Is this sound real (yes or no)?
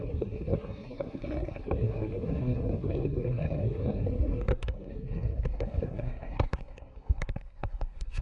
no